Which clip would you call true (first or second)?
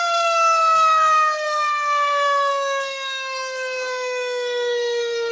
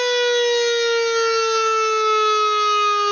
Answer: second